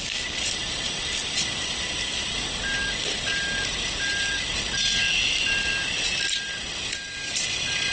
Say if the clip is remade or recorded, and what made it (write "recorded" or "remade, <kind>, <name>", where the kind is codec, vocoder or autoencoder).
recorded